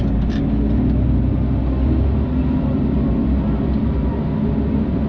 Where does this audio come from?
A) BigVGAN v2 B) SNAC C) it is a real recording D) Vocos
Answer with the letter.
C